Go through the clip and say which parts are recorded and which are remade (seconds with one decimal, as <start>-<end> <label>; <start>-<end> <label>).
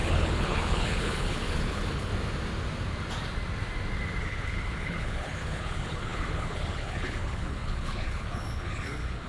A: 0.0-2.1 remade; 2.1-4.2 recorded; 4.2-9.3 remade